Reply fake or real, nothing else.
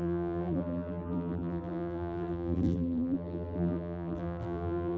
fake